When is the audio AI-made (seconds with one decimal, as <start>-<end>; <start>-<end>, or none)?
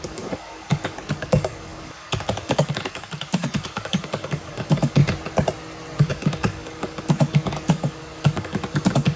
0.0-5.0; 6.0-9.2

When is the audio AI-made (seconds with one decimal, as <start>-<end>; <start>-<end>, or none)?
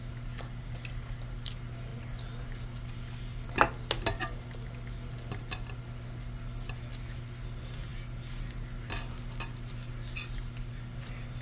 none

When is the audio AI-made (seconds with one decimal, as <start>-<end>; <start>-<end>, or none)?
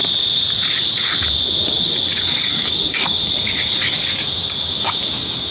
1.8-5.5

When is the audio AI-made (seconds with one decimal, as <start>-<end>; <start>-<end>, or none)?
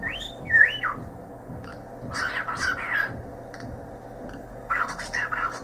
0.0-1.7; 4.3-5.6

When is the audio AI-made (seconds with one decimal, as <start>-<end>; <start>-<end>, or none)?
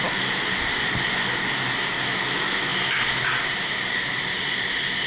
none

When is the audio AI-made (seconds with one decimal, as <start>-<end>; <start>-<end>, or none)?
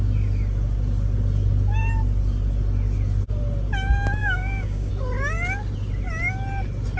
4.2-4.9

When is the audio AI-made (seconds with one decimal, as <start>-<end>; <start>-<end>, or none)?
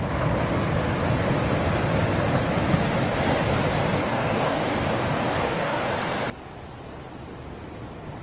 4.0-5.9